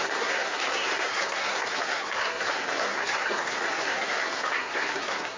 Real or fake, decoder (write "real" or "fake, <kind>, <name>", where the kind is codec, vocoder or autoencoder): fake, codec, SNAC